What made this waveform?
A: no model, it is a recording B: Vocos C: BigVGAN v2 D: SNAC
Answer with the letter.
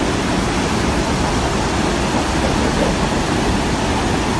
C